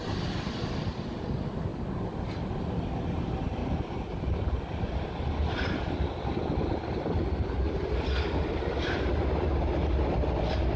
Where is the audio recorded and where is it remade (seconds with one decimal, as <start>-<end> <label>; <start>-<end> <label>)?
0.0-10.8 recorded